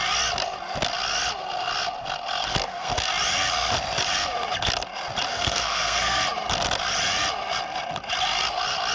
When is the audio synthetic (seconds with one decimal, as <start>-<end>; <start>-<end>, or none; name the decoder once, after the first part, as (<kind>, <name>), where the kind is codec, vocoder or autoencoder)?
2.5-3.1 (codec, SNAC); 5.3-6.2